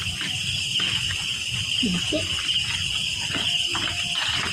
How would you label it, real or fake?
real